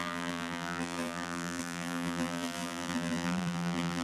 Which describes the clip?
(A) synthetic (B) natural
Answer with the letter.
A